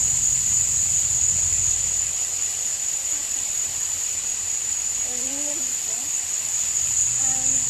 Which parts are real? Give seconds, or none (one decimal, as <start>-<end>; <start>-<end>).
0.0-2.7; 6.3-7.7